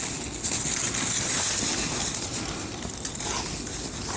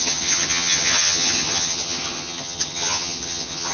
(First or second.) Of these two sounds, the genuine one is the first